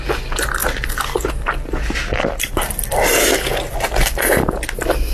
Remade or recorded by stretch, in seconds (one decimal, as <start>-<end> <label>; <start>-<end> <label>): 0.0-5.1 recorded